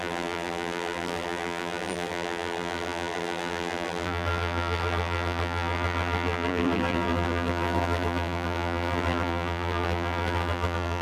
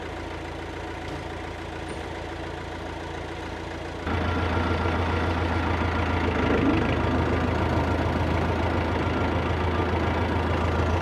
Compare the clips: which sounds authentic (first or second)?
second